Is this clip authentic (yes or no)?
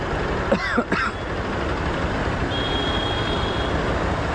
yes